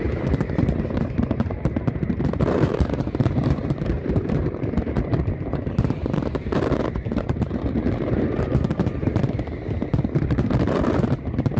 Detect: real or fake fake